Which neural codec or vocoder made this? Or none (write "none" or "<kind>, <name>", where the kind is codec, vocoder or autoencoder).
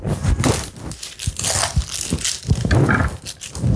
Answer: none